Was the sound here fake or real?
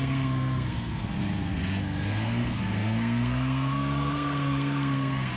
fake